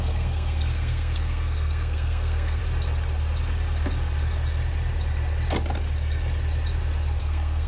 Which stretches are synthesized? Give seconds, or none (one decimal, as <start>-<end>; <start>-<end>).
0.0-2.6; 7.2-7.7